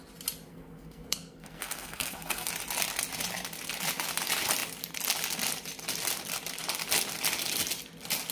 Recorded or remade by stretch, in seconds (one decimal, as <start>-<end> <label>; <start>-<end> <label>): 0.0-0.5 recorded; 0.5-2.5 remade; 2.5-8.3 recorded